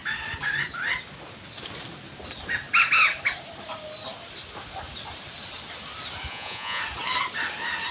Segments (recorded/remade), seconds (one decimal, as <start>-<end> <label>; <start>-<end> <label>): 0.0-6.3 recorded; 6.3-6.8 remade; 6.8-7.9 recorded

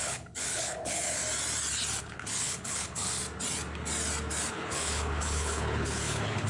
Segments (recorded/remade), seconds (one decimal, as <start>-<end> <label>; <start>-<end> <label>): 0.0-1.2 remade; 1.2-2.0 recorded; 2.0-3.2 remade; 3.2-4.5 recorded; 4.5-6.5 remade

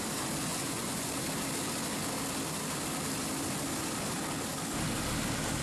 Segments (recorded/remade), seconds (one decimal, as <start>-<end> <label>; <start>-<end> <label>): 0.0-0.5 recorded; 0.5-1.1 remade; 1.1-5.6 recorded

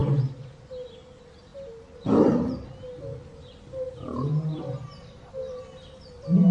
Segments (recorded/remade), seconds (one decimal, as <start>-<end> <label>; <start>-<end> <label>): 0.0-6.5 recorded

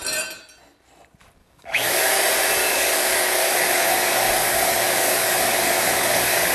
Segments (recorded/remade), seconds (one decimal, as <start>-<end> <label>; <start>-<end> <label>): 0.0-1.4 recorded; 1.4-2.2 remade; 2.2-2.6 recorded; 2.6-6.5 remade

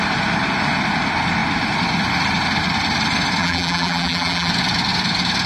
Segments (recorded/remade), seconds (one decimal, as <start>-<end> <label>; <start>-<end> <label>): 0.0-3.4 recorded; 3.4-4.5 remade; 4.5-5.5 recorded

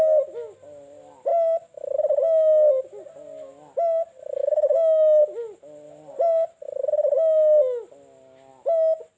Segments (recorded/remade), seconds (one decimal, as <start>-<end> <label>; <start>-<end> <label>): 0.0-4.4 recorded; 4.4-5.2 remade; 5.2-9.2 recorded

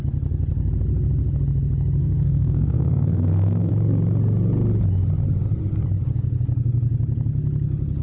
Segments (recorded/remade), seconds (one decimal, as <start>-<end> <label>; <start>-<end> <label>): 0.0-2.0 recorded; 2.0-3.7 remade; 3.7-8.0 recorded